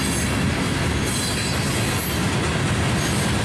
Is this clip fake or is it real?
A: real